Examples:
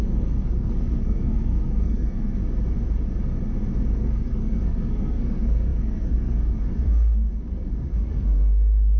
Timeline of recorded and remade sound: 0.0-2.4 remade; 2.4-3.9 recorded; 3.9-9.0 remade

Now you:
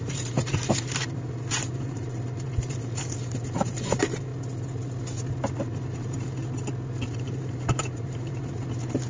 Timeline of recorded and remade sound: 0.0-4.3 remade; 4.3-5.3 recorded; 5.3-6.4 remade; 6.4-7.1 recorded; 7.1-9.1 remade

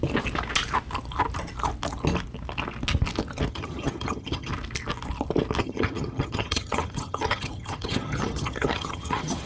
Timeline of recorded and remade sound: 0.0-3.5 recorded; 3.5-4.5 remade; 4.5-5.6 recorded; 5.6-9.5 remade

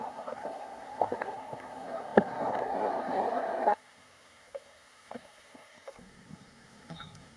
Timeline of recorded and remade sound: 0.0-7.4 remade

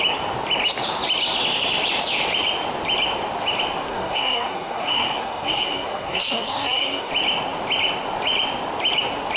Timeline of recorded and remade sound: 0.0-3.8 recorded; 3.8-7.1 remade; 7.1-9.4 recorded

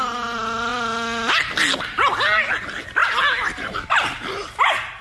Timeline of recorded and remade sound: 0.0-5.0 recorded

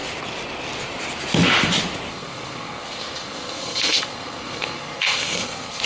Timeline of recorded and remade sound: 0.0-2.1 recorded; 2.1-5.8 remade

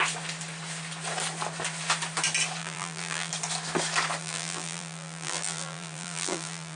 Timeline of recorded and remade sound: 0.0-2.6 recorded; 2.6-3.3 remade; 3.3-4.2 recorded; 4.2-6.8 remade